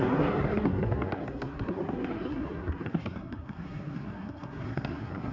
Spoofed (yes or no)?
yes